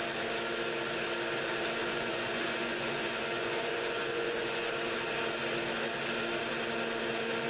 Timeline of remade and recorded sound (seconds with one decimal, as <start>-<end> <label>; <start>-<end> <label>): 0.0-1.8 recorded; 1.8-4.7 remade; 4.7-7.5 recorded